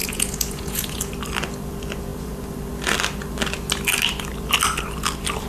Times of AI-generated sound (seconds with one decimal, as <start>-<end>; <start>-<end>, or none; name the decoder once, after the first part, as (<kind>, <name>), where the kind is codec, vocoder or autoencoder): 0.0-1.1 (vocoder, Vocos)